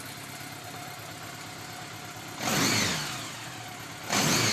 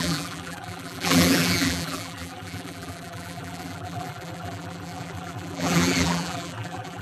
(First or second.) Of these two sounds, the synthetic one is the second